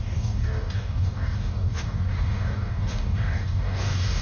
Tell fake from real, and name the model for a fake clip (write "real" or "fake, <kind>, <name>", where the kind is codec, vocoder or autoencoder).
fake, codec, DAC